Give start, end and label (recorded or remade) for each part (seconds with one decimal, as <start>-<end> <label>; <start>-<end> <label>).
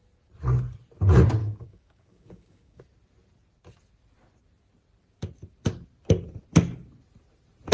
0.0-1.4 recorded; 1.4-2.8 remade; 2.8-7.7 recorded